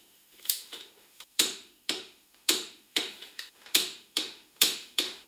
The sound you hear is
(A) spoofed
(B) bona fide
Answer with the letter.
A